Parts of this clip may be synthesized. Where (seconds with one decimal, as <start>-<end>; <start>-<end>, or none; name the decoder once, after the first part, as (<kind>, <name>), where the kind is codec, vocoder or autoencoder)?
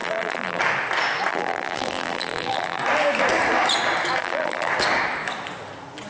0.0-0.6 (vocoder, BigVGAN v2); 1.3-2.8; 4.2-4.7